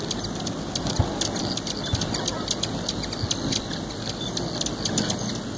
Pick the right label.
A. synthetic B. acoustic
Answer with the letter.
B